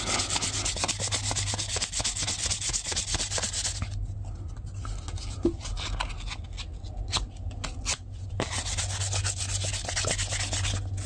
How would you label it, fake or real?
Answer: real